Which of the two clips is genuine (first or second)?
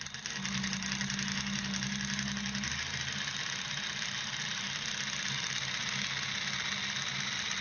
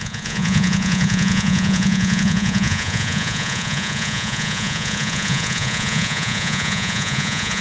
first